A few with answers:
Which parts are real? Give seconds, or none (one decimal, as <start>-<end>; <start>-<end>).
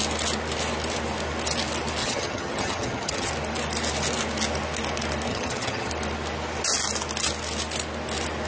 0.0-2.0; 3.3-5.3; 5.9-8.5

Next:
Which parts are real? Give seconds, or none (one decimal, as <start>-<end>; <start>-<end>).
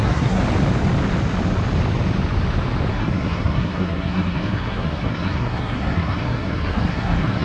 0.4-2.9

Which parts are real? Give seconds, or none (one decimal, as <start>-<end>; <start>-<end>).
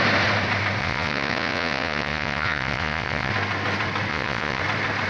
0.0-0.8; 3.3-4.1; 4.6-5.1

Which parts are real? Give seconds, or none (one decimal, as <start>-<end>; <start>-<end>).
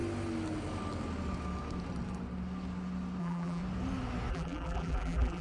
0.0-3.2; 3.6-4.3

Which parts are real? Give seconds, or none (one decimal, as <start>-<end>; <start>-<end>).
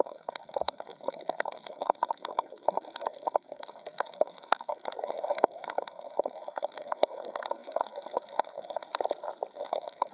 8.9-9.5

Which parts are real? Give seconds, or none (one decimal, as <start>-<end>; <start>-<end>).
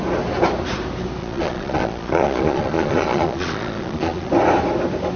0.0-1.2; 4.3-5.2